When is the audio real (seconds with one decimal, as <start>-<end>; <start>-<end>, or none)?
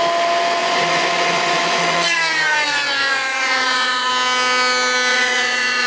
0.0-0.6; 4.1-5.1